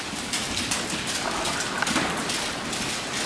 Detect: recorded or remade recorded